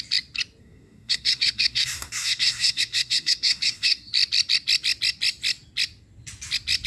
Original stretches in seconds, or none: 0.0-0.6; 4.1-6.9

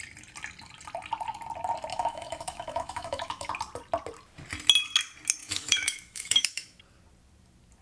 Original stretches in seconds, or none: 0.0-1.9; 3.5-5.4; 6.8-7.8

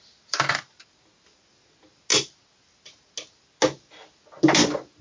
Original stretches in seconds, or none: 0.0-5.0

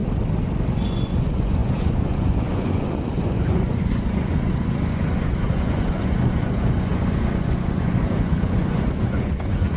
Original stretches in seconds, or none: 0.0-0.9

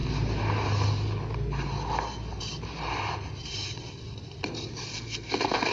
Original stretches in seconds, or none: 0.0-4.9

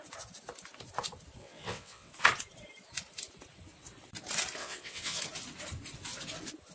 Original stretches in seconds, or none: 0.0-1.4; 2.1-4.6; 5.2-6.7

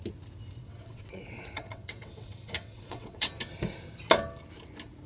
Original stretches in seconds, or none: 0.0-0.6; 3.3-5.1

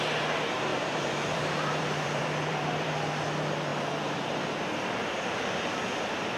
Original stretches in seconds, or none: 0.0-0.7; 2.9-3.7; 4.5-6.4